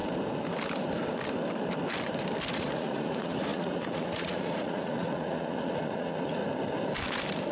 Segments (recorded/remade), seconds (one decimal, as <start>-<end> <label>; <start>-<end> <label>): 0.0-2.5 recorded; 2.5-6.4 remade; 6.4-7.5 recorded